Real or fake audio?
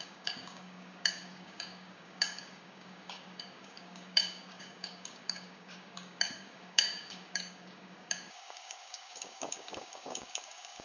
fake